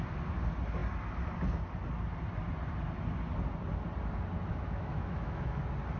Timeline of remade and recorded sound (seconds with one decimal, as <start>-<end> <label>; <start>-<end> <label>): 0.0-4.5 recorded; 4.5-5.6 remade; 5.6-6.0 recorded